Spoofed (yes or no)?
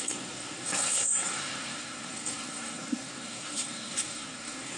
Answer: yes